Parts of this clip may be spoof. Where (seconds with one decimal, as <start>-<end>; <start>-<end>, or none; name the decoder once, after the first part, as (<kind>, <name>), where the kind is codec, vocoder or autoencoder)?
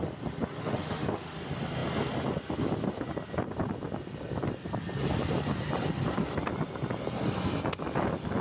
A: 0.6-1.4 (autoencoder, DAC-VAE)